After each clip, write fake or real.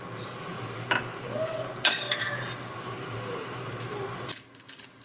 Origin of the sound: real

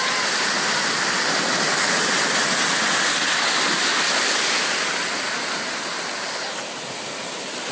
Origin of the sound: real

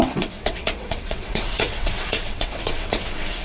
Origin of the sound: fake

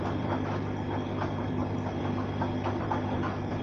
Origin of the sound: fake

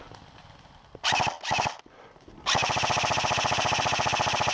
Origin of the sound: real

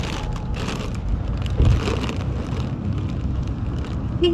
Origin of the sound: real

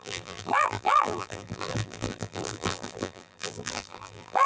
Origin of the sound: fake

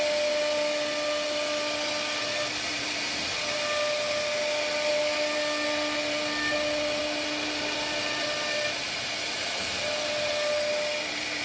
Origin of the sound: real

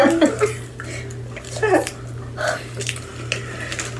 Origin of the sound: real